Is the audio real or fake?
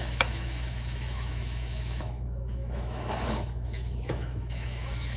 fake